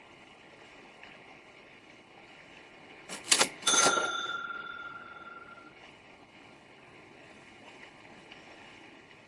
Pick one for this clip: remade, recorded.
remade